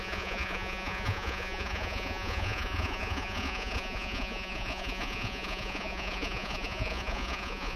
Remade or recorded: remade